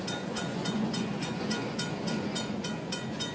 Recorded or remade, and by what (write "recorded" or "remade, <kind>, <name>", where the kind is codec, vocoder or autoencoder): remade, vocoder, Vocos